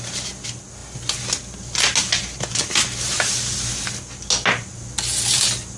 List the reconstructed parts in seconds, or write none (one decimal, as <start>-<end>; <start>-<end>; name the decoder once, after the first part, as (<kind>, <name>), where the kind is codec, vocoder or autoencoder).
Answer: none